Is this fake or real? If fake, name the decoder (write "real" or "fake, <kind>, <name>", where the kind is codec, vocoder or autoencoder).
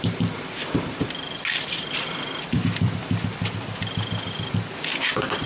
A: fake, vocoder, BigVGAN v2